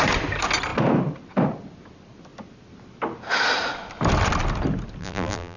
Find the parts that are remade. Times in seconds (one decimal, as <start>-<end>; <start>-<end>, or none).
5.0-5.6